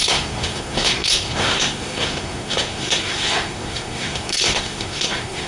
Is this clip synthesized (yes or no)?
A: yes